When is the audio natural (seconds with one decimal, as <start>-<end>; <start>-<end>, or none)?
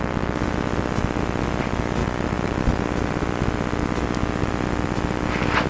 0.0-2.0; 2.6-5.7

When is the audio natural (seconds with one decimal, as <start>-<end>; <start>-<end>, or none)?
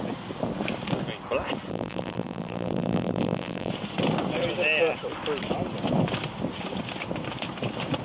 0.0-1.7; 3.7-8.0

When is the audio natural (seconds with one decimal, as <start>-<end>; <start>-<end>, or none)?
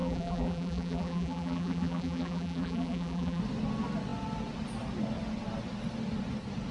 3.4-6.7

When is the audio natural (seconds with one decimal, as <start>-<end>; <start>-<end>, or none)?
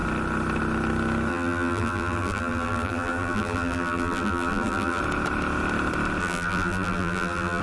0.0-1.3; 5.0-6.2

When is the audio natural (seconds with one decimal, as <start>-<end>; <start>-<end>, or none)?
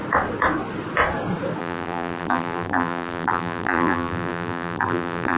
0.0-1.6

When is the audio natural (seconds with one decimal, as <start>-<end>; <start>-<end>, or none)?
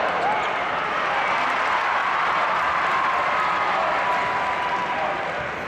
0.0-5.7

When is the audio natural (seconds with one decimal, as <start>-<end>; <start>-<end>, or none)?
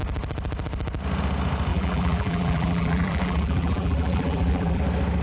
0.0-1.7; 4.8-5.2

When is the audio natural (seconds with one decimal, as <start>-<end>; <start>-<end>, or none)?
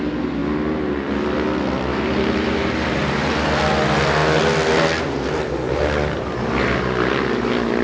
0.0-1.9; 3.6-7.8